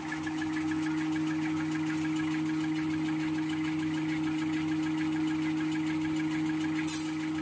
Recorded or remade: recorded